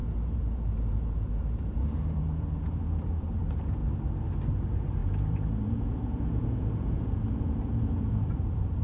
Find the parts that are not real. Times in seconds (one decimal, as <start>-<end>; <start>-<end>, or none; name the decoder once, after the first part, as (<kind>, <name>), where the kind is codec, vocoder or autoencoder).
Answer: 0.0-3.8 (vocoder, Vocos); 4.5-8.8